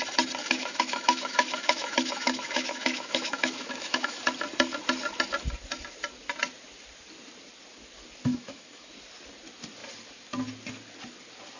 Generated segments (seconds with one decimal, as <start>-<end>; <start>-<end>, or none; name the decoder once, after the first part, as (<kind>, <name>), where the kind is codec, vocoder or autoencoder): 0.4-4.2 (autoencoder, DAC-VAE); 8.3-8.9

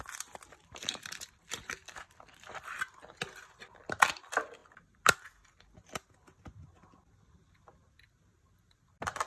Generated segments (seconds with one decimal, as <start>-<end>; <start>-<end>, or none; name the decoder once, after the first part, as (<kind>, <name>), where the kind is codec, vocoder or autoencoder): 0.0-1.8 (vocoder, BigVGAN v2); 3.4-4.6; 7.5-9.3

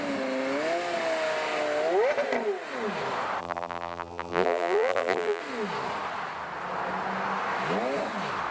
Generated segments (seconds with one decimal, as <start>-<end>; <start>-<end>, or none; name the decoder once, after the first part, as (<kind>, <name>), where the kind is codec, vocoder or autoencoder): 3.4-5.4 (vocoder, BigVGAN v2)

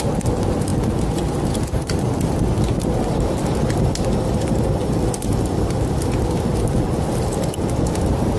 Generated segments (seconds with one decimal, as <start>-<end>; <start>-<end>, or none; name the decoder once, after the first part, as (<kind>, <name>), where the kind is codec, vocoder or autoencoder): none